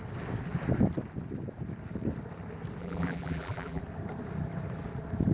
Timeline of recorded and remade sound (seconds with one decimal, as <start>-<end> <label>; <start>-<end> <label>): 0.0-2.8 recorded; 2.8-3.8 remade; 3.8-5.3 recorded